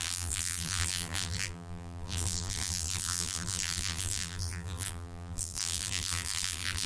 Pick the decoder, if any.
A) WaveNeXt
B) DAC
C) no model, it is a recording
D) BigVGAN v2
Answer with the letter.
D